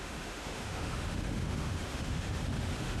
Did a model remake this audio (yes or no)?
yes